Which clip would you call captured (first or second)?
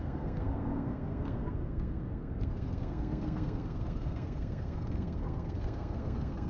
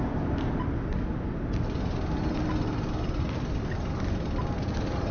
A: second